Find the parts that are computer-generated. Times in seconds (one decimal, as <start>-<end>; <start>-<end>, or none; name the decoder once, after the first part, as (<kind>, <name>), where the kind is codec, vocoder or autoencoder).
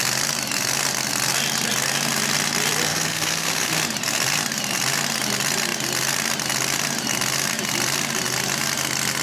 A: 2.9-3.7 (codec, DAC)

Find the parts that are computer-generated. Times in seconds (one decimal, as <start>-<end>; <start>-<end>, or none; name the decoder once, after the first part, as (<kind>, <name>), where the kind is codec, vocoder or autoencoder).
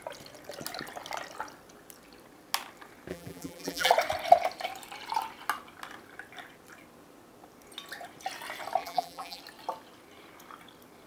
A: 3.1-3.9 (vocoder, BigVGAN v2); 8.8-9.4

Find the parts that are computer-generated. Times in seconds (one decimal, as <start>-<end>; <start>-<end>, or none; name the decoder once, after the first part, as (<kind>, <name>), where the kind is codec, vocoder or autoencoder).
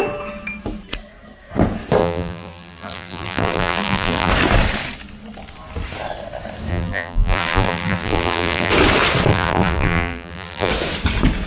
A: 2.0-4.3 (vocoder, BigVGAN v2); 6.7-8.7; 9.3-10.7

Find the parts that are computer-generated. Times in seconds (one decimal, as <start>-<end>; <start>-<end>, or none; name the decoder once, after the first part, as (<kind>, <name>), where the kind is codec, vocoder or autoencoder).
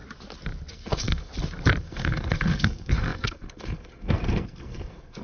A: 0.7-1.3 (codec, SNAC); 1.8-5.2